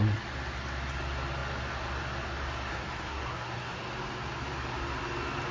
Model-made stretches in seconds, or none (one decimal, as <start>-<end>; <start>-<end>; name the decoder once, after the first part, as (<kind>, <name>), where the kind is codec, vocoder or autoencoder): 2.7-3.8 (codec, SNAC)